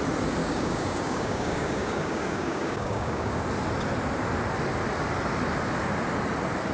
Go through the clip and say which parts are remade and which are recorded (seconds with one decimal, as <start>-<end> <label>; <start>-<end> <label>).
0.0-0.4 recorded; 0.4-3.4 remade; 3.4-6.7 recorded